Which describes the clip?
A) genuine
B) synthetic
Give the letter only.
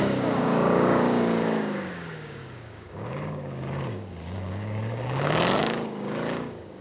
B